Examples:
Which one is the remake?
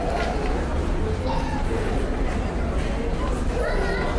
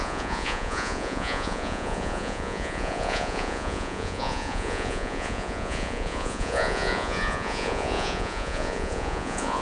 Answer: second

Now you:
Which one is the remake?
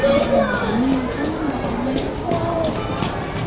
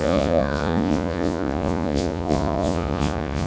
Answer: second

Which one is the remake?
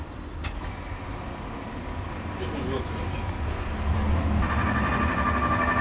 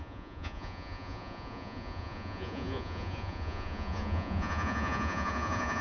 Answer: second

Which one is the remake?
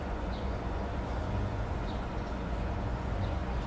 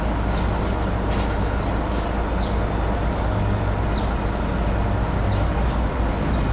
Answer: first